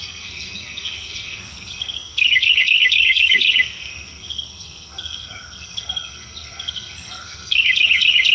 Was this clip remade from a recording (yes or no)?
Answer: yes